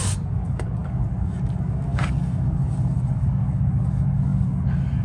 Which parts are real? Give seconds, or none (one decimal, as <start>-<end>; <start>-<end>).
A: none